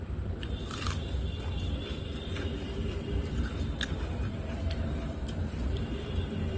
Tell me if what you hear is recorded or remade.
remade